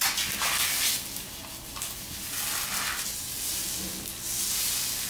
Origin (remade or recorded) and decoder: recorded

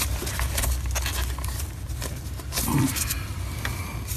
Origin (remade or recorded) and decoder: recorded